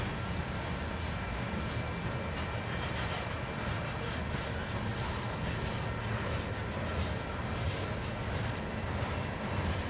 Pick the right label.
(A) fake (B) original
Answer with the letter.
B